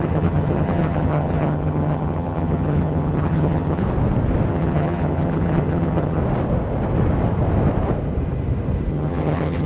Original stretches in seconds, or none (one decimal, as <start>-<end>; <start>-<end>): 3.8-4.5; 6.2-8.9